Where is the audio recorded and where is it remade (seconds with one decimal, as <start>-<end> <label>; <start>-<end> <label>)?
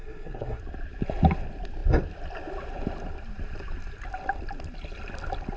0.0-0.6 remade; 0.6-5.6 recorded